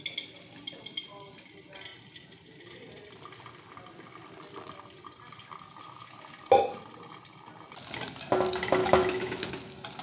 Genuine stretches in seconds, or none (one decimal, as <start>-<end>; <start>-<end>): 0.0-8.8; 9.5-10.0